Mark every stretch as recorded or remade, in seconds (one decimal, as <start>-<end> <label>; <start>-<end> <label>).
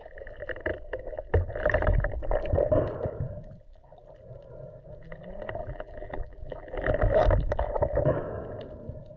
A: 0.0-5.6 recorded; 5.6-6.9 remade; 6.9-9.2 recorded